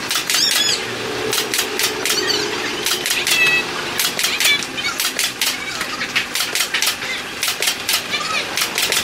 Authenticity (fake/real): real